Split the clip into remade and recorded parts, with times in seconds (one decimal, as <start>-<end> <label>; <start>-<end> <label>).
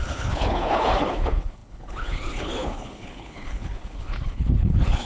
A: 0.0-5.0 remade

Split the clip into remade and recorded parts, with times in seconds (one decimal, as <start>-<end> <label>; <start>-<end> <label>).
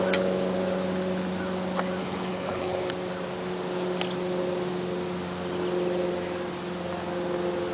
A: 0.0-2.0 recorded; 2.0-2.9 remade; 2.9-7.7 recorded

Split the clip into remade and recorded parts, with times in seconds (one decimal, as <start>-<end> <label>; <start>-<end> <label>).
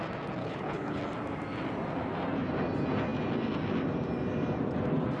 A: 0.0-0.4 recorded; 0.4-1.0 remade; 1.0-5.2 recorded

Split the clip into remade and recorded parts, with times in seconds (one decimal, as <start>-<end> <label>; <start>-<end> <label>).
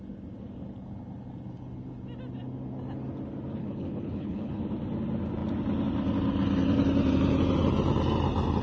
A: 0.0-3.6 recorded; 3.6-4.6 remade; 4.6-8.6 recorded